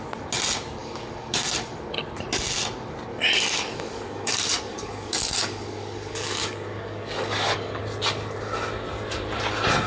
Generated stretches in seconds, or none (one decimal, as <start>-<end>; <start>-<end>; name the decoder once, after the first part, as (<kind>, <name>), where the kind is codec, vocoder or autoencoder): 0.8-1.4 (codec, DAC); 3.1-7.8